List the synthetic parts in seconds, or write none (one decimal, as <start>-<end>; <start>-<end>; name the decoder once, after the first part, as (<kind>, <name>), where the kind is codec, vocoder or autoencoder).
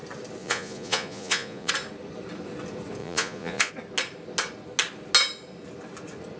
0.4-1.7 (vocoder, Vocos); 3.0-3.7